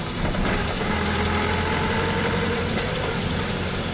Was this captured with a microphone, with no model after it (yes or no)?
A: yes